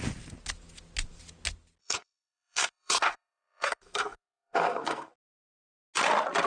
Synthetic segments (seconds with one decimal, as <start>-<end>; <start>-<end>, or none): 1.8-5.1

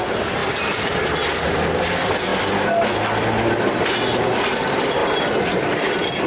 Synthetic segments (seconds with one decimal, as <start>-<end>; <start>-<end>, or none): 0.0-2.3; 4.6-5.0; 5.6-6.3

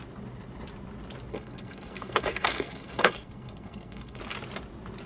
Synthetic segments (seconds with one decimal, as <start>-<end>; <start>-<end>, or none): 1.3-4.2